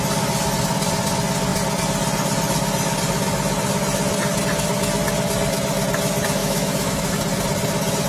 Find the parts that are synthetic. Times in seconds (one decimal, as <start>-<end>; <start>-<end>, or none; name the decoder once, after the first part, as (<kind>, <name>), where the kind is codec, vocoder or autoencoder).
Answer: 6.4-7.1 (autoencoder, DAC-VAE)